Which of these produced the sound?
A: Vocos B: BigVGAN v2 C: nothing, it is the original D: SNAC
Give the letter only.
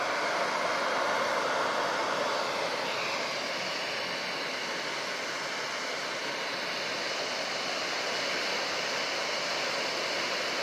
C